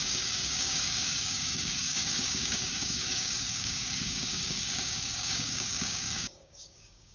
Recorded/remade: remade